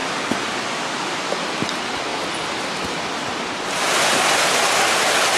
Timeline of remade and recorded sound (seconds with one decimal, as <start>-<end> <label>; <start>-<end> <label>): 0.0-5.4 recorded

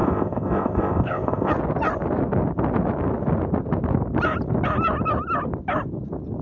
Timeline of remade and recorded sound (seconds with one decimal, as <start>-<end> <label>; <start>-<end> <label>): 0.0-1.5 remade; 1.5-6.4 recorded

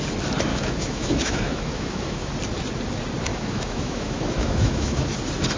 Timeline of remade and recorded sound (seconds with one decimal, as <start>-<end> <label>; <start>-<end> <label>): 0.0-0.5 recorded; 0.5-2.3 remade; 2.3-3.3 recorded; 3.3-5.1 remade; 5.1-5.6 recorded

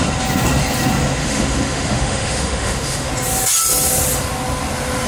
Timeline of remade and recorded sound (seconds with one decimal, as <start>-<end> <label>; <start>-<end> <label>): 0.0-1.2 recorded; 1.2-3.1 remade; 3.1-5.1 recorded